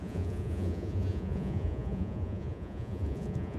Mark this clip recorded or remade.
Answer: remade